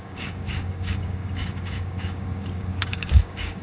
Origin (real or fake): fake